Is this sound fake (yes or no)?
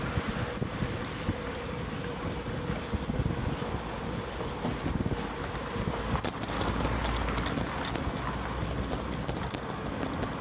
no